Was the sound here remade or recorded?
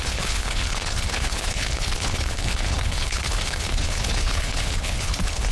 remade